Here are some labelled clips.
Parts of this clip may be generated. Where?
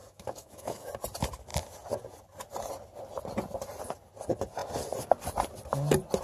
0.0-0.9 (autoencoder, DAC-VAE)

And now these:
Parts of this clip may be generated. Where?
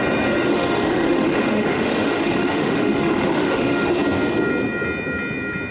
0.5-3.9 (autoencoder, DAC-VAE)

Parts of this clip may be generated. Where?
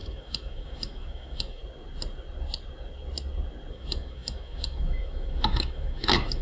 0.0-1.6 (autoencoder, DAC-VAE); 3.7-6.4